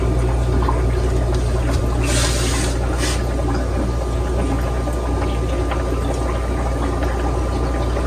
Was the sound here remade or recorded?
recorded